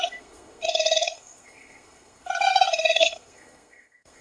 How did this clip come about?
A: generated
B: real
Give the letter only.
A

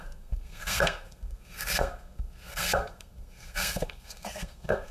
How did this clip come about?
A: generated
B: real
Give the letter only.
A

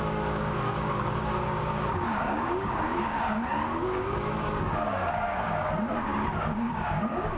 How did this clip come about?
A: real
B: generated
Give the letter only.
B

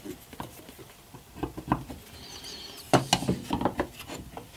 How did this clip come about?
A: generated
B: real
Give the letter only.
B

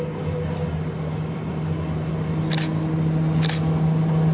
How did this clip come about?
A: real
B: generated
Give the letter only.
A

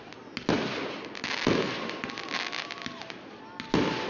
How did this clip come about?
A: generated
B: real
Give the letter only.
B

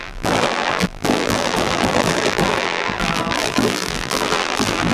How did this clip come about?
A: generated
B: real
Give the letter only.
A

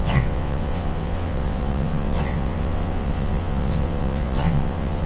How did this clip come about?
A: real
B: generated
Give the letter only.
B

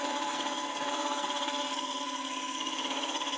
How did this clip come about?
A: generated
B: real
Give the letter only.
A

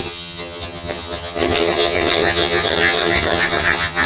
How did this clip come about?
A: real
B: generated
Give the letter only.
B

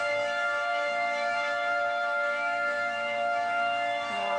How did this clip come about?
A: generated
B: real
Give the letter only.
A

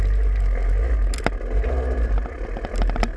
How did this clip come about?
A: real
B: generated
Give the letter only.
A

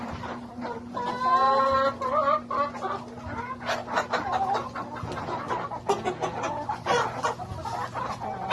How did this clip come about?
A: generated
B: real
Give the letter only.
B